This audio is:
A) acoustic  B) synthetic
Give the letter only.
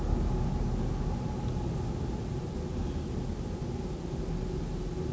A